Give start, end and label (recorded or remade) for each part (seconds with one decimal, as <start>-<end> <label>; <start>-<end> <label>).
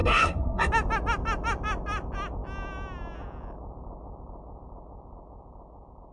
0.0-0.7 remade; 0.7-6.1 recorded